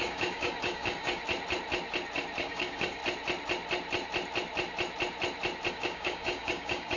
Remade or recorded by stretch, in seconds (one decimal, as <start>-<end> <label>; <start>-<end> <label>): 0.0-1.2 remade; 1.2-2.4 recorded; 2.4-3.0 remade; 3.0-5.7 recorded; 5.7-7.0 remade